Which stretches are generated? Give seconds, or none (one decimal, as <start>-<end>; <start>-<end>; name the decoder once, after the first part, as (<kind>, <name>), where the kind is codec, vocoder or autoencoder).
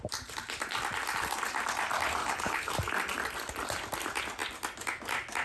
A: 2.2-2.7 (codec, HILCodec)